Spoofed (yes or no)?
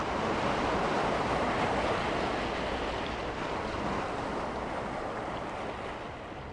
no